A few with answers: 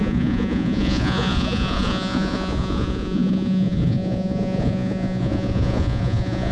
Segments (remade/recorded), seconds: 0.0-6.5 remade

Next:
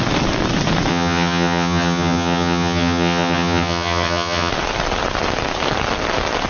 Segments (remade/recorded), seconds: 0.0-0.9 recorded; 0.9-4.5 remade; 4.5-6.5 recorded

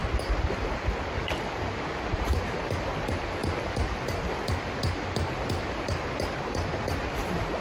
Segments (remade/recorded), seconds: 0.0-7.6 recorded

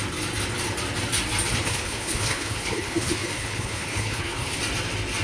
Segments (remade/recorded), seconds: 0.0-1.5 recorded; 1.5-4.6 remade; 4.6-5.2 recorded

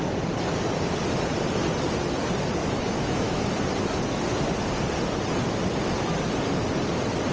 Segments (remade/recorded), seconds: 0.0-2.6 recorded; 2.6-3.4 remade; 3.4-7.3 recorded

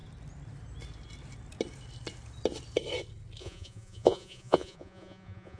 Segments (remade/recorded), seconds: 0.0-3.4 recorded; 3.4-5.6 remade

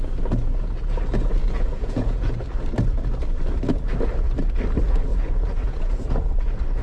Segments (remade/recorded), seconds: 0.0-1.4 recorded; 1.4-2.3 remade; 2.3-5.1 recorded; 5.1-6.0 remade; 6.0-6.8 recorded

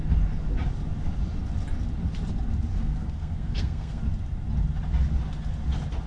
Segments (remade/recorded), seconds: 0.0-2.7 recorded; 2.7-4.0 remade; 4.0-6.1 recorded